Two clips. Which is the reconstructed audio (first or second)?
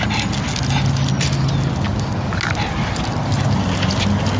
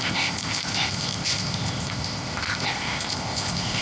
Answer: second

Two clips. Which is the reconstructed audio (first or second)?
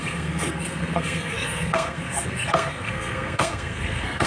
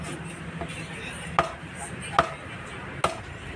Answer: first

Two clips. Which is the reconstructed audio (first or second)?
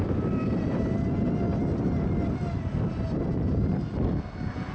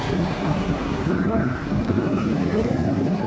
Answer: second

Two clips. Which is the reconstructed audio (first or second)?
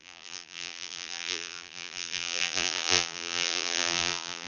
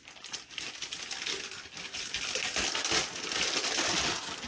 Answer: first